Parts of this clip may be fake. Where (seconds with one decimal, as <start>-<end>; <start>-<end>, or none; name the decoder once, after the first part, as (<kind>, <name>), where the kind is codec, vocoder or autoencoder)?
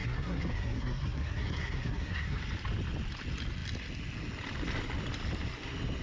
0.0-2.4 (codec, SNAC)